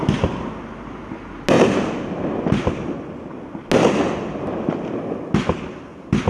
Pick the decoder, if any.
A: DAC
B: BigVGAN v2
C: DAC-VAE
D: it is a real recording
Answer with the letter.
D